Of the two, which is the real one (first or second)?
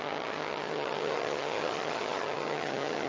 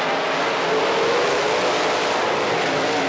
second